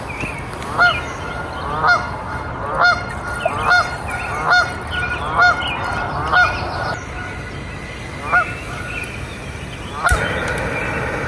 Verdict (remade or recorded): recorded